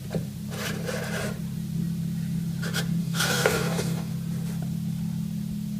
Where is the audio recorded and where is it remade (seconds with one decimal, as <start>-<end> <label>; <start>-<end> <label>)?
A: 0.0-3.0 recorded; 3.0-4.1 remade; 4.1-5.8 recorded